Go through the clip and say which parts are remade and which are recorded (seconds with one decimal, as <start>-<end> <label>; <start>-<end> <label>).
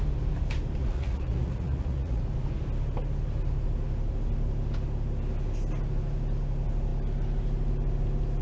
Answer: 0.0-0.8 recorded; 0.8-2.2 remade; 2.2-8.4 recorded